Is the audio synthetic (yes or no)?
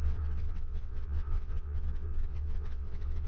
yes